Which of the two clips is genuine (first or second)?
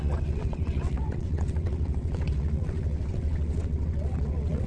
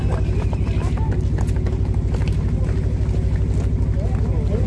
second